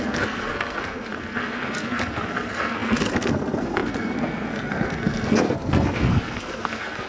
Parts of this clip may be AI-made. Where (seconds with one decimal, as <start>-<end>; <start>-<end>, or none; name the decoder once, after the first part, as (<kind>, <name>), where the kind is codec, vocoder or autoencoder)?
0.0-7.1 (codec, SNAC)